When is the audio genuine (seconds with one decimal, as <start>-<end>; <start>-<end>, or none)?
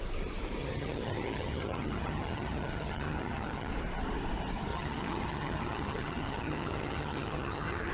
0.0-0.6; 3.7-4.7